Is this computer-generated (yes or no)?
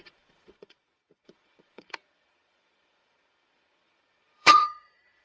yes